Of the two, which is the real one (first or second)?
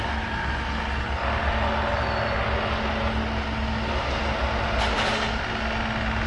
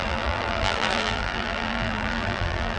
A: first